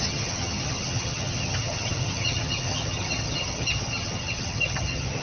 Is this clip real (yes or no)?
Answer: no